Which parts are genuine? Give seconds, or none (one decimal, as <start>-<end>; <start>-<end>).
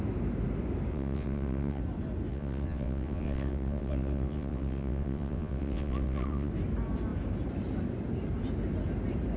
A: 0.0-0.9; 1.8-2.3; 6.5-9.4